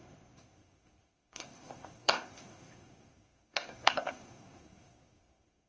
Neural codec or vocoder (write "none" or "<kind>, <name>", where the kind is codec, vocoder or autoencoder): codec, SNAC